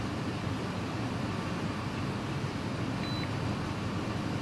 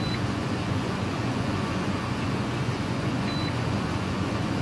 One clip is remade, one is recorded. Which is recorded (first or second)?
first